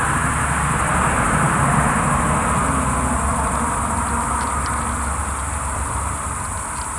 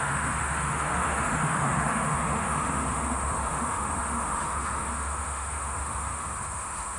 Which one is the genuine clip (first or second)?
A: first